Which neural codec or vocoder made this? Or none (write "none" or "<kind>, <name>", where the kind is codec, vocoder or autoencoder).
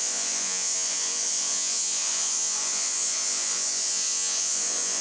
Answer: vocoder, Vocos